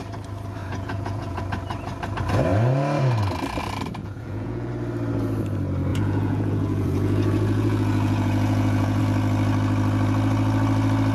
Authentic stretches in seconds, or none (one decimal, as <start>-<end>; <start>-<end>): 0.0-0.6; 1.4-4.0; 4.7-5.9; 9.0-11.1